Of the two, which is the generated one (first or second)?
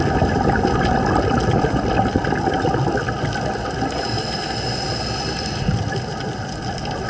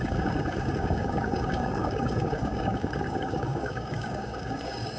second